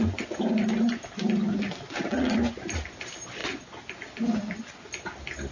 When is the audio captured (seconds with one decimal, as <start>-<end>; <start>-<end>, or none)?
0.0-5.5